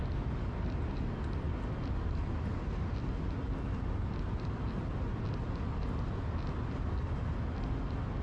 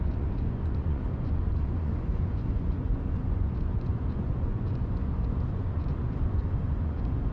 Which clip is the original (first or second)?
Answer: first